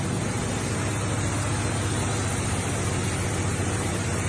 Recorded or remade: recorded